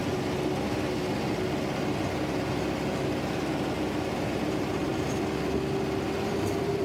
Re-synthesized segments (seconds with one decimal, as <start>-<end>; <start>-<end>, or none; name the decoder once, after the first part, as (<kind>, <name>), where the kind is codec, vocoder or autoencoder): 4.1-4.9 (vocoder, BigVGAN v2); 6.3-6.8